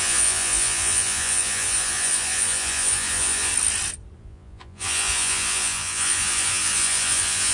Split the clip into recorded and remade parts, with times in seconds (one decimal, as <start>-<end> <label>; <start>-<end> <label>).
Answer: 0.0-3.5 remade; 3.5-4.2 recorded; 4.2-7.5 remade